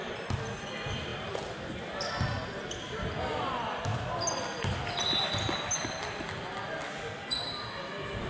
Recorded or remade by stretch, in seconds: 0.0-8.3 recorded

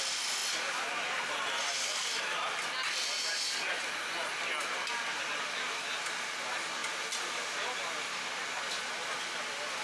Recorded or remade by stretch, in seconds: 0.0-9.8 recorded

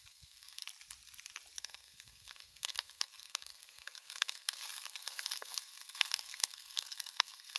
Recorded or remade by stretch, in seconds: 0.0-0.6 remade; 0.6-1.6 recorded; 1.6-7.6 remade

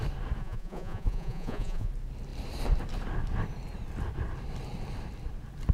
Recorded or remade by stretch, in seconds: 0.0-0.4 recorded; 0.4-1.9 remade; 1.9-5.7 recorded

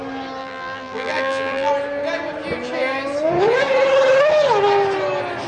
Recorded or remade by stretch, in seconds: 0.0-0.4 recorded; 0.4-1.7 remade; 1.7-5.5 recorded

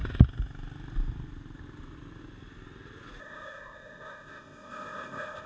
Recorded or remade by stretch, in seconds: 0.0-3.2 recorded; 3.2-5.5 remade

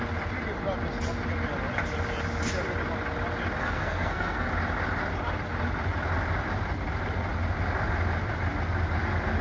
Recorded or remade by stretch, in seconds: 0.0-3.6 recorded; 3.6-4.5 remade; 4.5-9.4 recorded